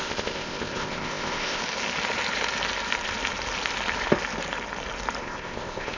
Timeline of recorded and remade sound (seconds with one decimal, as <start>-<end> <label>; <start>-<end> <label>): 0.0-1.6 remade; 1.6-5.2 recorded; 5.2-6.0 remade